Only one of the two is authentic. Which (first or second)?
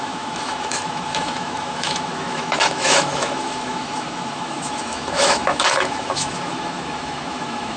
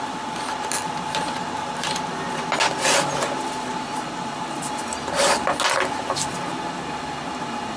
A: second